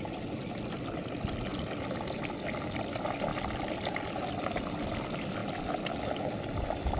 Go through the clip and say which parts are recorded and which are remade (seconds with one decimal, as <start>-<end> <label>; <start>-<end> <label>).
0.0-7.0 recorded